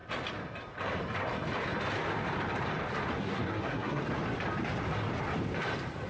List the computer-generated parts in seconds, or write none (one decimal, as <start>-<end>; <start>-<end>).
3.2-4.0